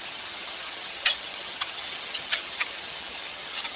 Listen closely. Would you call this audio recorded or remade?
remade